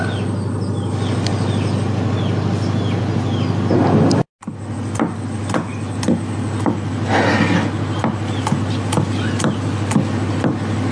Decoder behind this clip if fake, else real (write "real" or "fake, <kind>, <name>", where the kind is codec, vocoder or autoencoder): real